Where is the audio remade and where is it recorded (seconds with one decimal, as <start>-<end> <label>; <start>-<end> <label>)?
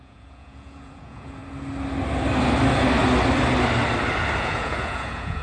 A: 0.0-1.4 remade; 1.4-4.4 recorded; 4.4-5.4 remade